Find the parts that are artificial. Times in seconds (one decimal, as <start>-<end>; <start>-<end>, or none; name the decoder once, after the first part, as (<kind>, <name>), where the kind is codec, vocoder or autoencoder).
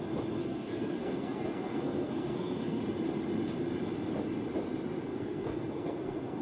0.4-2.8 (codec, SNAC); 5.1-6.4